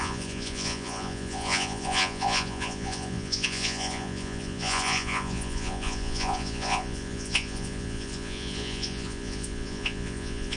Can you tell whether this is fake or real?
fake